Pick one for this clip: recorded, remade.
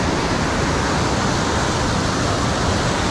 recorded